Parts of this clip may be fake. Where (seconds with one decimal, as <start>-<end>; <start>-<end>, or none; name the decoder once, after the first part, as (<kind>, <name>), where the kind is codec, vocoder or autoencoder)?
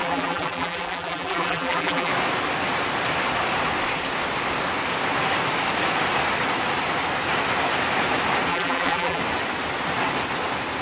0.0-2.1 (vocoder, BigVGAN v2); 8.5-9.2